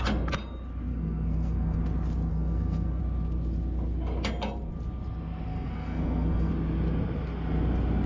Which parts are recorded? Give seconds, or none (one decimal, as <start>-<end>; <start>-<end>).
0.0-0.9; 1.8-2.3; 3.0-5.5; 6.5-8.1